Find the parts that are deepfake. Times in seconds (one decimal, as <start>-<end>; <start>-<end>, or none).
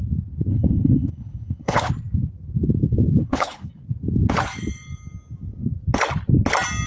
0.5-1.9; 3.2-3.7